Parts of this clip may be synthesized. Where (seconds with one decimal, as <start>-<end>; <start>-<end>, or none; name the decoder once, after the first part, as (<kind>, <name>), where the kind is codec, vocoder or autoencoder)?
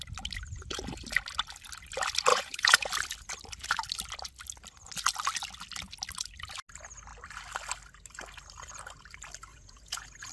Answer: 2.3-2.9 (vocoder, Vocos); 9.5-10.3